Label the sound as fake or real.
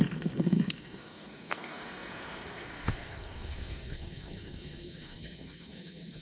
fake